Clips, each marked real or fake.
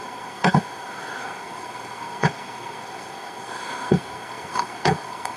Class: fake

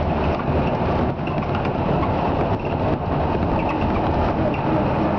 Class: real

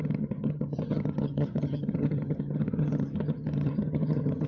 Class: fake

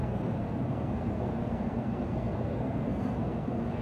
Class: fake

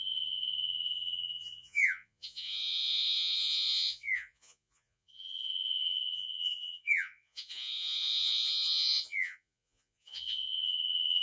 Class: fake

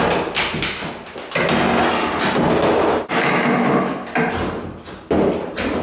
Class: real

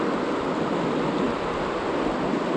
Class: real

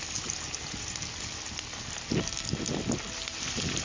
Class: real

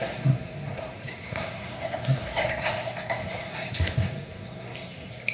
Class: fake